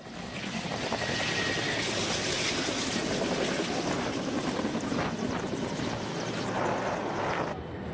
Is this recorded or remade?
recorded